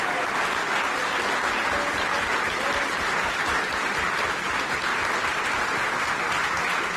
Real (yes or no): yes